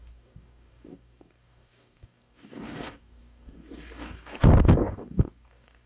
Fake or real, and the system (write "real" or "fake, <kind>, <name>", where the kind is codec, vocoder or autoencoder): fake, codec, DAC